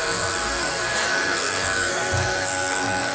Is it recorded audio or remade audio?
remade